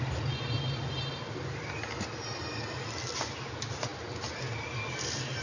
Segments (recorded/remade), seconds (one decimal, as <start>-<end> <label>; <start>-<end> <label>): 0.0-5.4 recorded